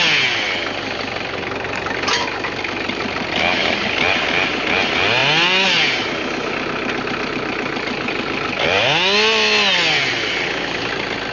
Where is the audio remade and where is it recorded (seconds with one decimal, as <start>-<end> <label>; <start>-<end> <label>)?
0.0-11.3 recorded